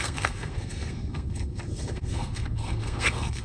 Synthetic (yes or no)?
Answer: yes